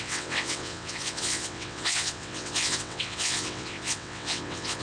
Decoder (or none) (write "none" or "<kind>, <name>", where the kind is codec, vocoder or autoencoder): vocoder, WaveNeXt